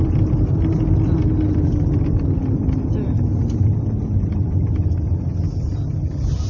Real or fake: real